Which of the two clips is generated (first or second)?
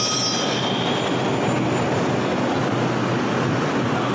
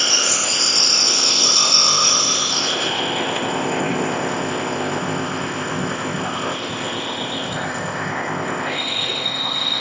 second